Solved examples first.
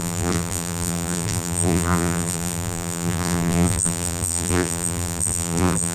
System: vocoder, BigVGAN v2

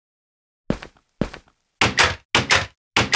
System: none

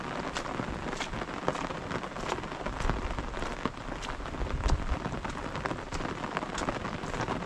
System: none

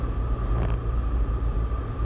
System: none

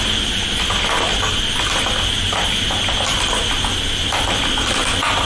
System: none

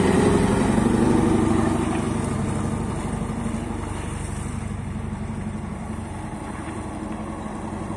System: vocoder, BigVGAN v2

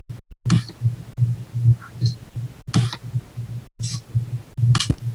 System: none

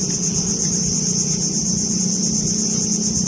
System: none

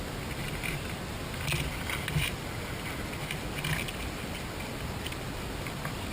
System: none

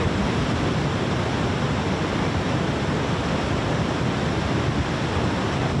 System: none